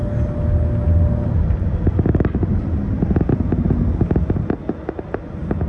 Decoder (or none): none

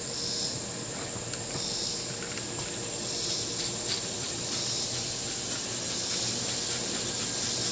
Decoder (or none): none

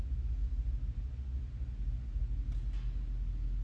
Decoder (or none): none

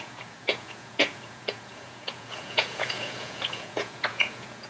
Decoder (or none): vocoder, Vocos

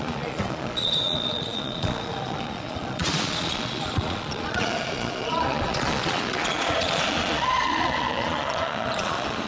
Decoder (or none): vocoder, Vocos